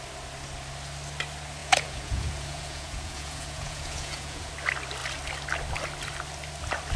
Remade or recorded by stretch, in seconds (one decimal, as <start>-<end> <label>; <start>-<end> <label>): 0.0-1.6 recorded; 1.6-4.5 remade; 4.5-7.0 recorded